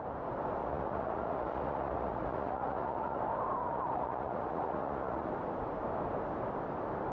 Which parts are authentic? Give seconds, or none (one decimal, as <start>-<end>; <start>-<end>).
0.0-0.6; 3.2-3.6; 5.3-7.1